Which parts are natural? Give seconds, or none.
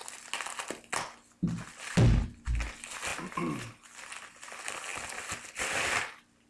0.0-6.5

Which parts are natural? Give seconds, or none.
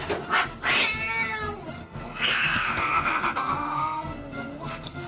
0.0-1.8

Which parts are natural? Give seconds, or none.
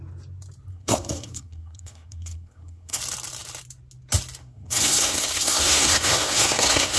0.0-0.7; 3.0-4.4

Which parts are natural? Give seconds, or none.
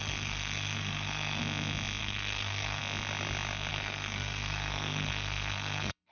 1.4-2.0; 2.8-3.7